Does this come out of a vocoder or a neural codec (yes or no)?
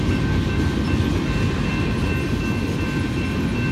no